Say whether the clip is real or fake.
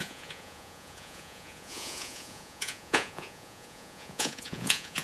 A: fake